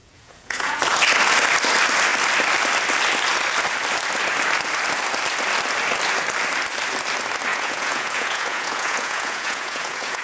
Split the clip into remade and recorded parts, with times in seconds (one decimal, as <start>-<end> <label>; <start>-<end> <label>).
0.0-0.8 remade; 0.8-7.5 recorded; 7.5-10.2 remade

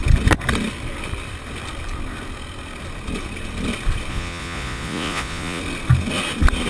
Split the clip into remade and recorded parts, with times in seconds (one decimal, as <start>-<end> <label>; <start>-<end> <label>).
0.0-4.1 recorded; 4.1-5.6 remade; 5.6-6.7 recorded

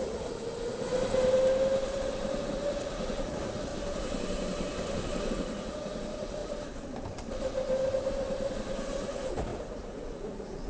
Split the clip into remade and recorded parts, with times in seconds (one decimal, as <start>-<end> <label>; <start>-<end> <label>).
0.0-0.9 remade; 0.9-2.3 recorded; 2.3-3.7 remade; 3.7-5.3 recorded; 5.3-6.4 remade; 6.4-8.9 recorded; 8.9-10.7 remade

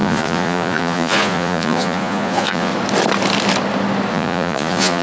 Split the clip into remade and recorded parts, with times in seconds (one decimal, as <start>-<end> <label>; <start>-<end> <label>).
0.0-2.7 remade; 2.7-4.1 recorded; 4.1-5.0 remade

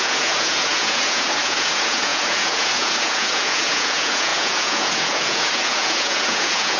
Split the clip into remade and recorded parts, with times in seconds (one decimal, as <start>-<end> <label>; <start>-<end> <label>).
0.0-6.8 remade

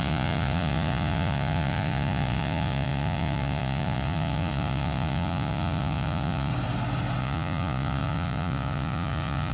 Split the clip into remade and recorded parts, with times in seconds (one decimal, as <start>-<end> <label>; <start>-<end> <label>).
0.0-6.5 remade; 6.5-7.2 recorded; 7.2-9.5 remade